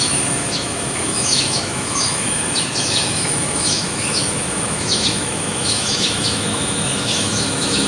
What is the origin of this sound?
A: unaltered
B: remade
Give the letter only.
B